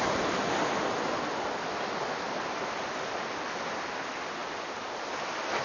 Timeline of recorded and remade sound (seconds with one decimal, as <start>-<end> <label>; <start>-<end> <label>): 0.0-5.6 recorded